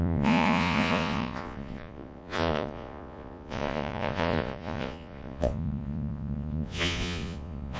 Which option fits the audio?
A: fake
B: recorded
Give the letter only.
A